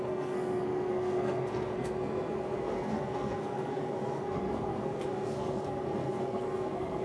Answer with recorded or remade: remade